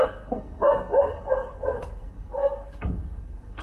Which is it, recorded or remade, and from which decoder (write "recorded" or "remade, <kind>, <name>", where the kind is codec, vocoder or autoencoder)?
remade, codec, SNAC